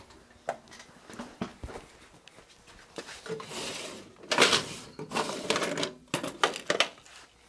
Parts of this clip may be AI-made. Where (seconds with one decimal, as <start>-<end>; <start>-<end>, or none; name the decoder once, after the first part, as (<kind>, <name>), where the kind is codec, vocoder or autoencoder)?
none